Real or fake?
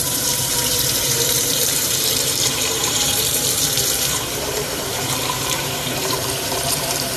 fake